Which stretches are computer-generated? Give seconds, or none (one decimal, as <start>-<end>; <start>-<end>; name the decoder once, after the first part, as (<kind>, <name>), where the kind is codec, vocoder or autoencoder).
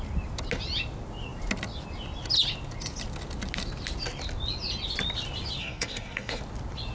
5.6-6.4 (codec, SNAC)